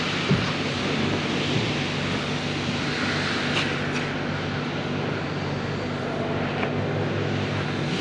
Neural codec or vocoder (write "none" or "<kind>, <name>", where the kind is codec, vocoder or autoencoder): none